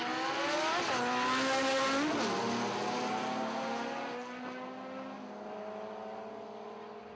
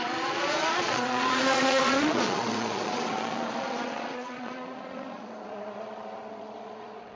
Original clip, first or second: first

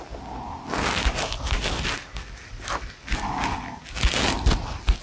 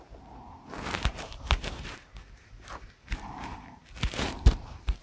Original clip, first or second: first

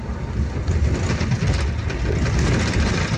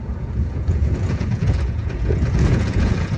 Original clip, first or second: first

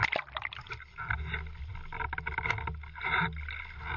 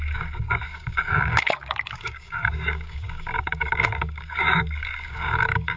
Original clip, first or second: first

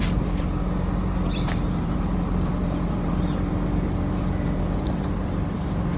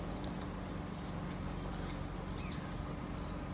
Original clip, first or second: second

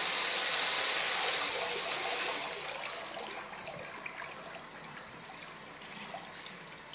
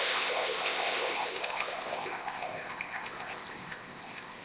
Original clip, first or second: first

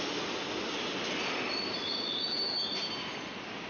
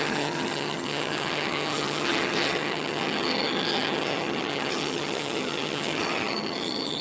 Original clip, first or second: first